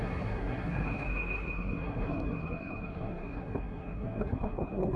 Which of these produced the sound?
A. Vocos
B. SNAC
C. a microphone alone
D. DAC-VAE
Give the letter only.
B